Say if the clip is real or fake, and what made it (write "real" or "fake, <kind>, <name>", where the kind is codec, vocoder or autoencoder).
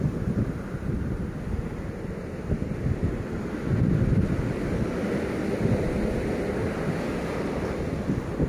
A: real